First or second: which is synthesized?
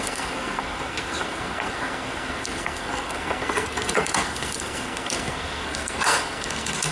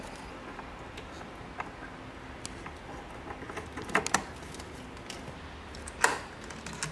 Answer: first